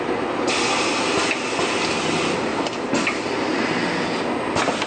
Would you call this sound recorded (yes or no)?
yes